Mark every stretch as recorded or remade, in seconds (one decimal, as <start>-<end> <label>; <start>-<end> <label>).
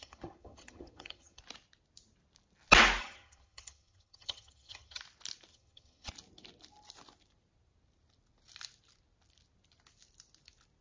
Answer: 0.0-1.4 remade; 1.4-3.0 recorded; 3.0-5.0 remade; 5.0-5.5 recorded; 5.5-6.1 remade; 6.1-10.8 recorded